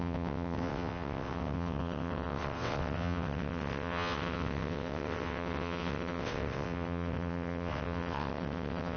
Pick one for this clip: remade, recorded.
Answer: remade